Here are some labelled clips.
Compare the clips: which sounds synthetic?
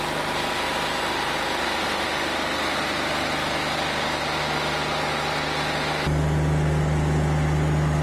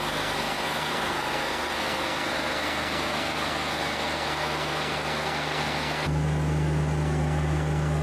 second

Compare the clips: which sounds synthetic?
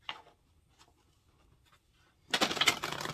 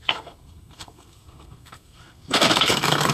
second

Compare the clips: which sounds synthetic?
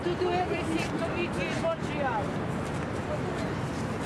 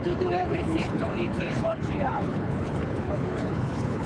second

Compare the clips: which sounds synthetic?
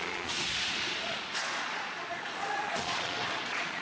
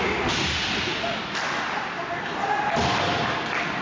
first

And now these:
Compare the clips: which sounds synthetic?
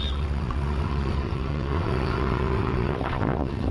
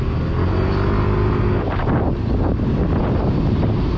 first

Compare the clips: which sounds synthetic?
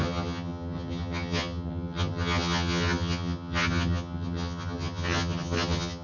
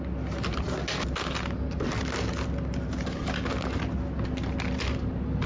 first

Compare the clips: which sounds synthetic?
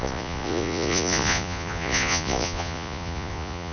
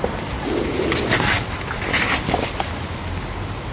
first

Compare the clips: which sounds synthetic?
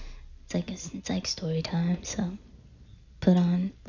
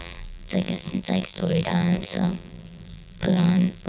second